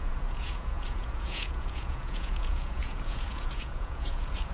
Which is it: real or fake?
fake